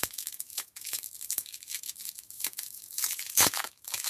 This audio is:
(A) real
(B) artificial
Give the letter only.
B